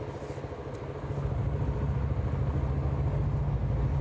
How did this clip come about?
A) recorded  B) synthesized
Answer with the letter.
A